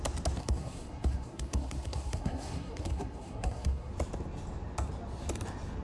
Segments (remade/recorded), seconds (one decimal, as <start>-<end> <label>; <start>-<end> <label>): 0.0-0.4 recorded; 0.4-3.9 remade; 3.9-5.8 recorded